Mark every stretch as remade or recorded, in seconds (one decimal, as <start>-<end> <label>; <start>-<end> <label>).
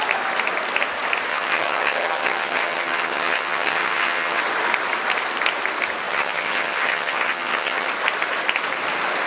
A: 0.0-1.3 recorded; 1.3-4.4 remade; 4.4-6.1 recorded; 6.1-7.9 remade; 7.9-9.3 recorded